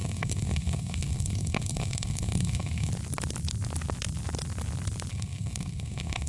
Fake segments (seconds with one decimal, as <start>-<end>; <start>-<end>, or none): 0.0-2.9; 5.1-6.3